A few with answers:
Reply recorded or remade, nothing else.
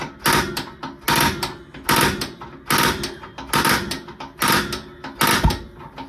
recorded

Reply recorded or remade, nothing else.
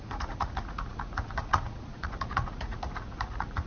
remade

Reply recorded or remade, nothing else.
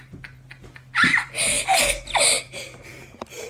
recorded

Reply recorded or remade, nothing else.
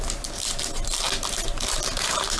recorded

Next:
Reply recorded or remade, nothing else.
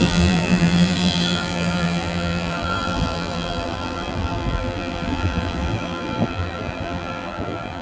remade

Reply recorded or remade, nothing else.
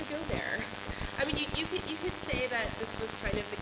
recorded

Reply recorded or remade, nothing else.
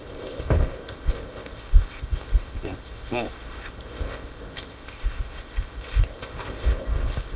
remade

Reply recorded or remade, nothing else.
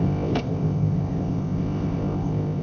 remade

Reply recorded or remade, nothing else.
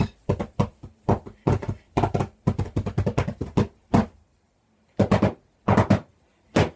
recorded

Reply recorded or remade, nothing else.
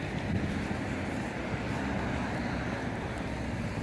recorded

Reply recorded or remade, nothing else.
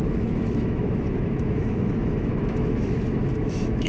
remade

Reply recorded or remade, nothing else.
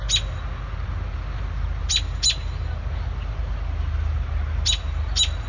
recorded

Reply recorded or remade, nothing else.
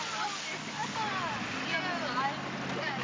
recorded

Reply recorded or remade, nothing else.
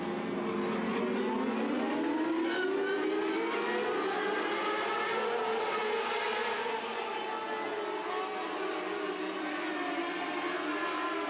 recorded